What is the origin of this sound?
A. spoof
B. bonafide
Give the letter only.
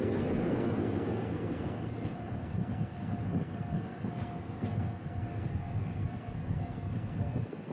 A